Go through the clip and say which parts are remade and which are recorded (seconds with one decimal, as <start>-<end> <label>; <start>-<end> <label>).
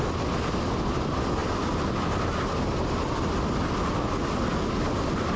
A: 0.0-5.4 recorded